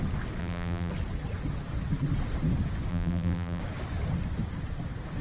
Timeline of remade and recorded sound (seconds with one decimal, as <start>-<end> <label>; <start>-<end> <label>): 0.0-0.4 recorded; 0.4-0.9 remade; 0.9-2.9 recorded; 2.9-3.6 remade; 3.6-5.2 recorded